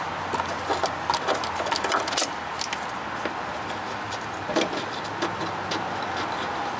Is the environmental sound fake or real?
real